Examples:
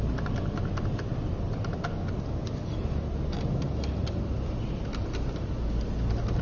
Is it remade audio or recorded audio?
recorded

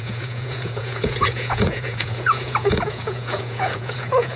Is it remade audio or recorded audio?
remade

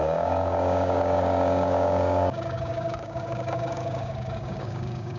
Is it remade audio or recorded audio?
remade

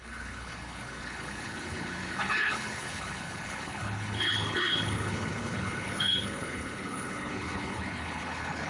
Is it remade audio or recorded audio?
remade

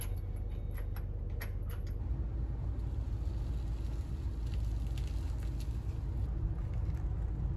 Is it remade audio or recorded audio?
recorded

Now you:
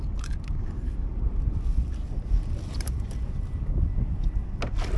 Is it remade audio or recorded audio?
recorded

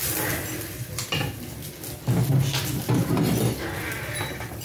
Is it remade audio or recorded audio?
recorded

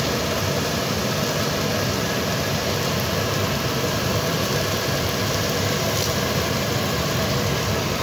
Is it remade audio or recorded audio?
remade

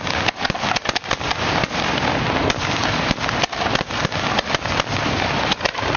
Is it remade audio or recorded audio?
recorded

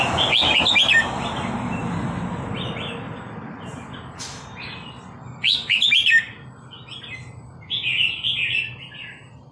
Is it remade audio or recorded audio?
recorded